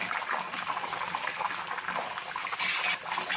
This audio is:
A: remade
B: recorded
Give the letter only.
B